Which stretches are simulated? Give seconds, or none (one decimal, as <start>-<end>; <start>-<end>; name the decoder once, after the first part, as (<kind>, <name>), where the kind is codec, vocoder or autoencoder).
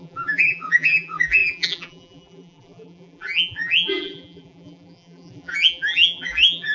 0.0-6.7 (vocoder, BigVGAN v2)